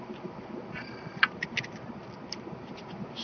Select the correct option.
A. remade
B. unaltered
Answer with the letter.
B